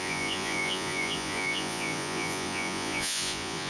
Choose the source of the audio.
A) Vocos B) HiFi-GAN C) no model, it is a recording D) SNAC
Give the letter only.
A